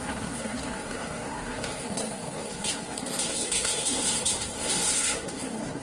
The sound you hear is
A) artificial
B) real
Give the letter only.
A